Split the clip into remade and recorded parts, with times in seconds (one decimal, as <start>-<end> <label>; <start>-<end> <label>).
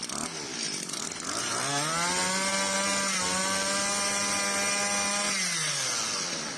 0.0-6.6 recorded